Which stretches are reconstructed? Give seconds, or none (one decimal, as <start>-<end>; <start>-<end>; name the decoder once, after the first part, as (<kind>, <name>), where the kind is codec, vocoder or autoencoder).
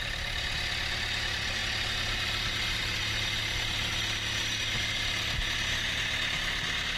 none